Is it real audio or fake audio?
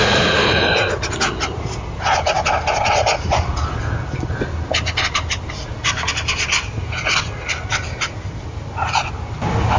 real